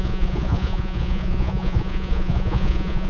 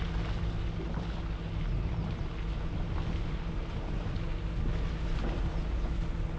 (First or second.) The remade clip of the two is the first